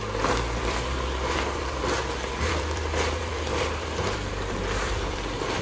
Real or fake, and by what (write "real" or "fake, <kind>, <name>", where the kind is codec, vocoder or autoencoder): fake, vocoder, BigVGAN v2